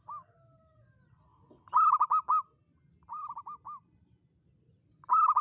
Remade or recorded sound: recorded